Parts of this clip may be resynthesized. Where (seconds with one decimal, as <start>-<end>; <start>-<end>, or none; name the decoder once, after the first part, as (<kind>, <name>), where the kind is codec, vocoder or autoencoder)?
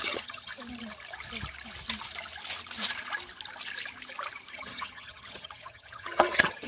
0.0-0.5 (vocoder, HiFi-GAN); 4.5-6.7